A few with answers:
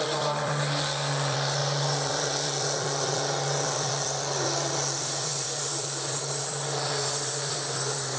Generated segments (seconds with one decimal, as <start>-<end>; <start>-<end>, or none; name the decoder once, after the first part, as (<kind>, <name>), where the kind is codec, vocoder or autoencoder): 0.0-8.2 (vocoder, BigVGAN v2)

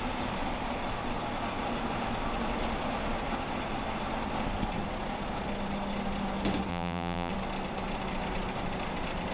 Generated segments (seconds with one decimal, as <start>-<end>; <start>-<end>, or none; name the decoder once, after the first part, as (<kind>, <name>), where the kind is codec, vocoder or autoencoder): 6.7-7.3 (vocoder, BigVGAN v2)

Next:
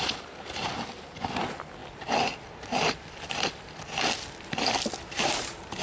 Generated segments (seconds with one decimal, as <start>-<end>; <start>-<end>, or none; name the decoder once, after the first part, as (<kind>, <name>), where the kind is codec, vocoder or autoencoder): 0.0-0.7 (vocoder, BigVGAN v2); 1.3-1.8; 5.0-5.8